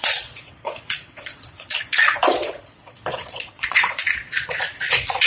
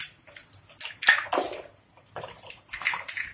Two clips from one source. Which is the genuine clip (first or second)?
second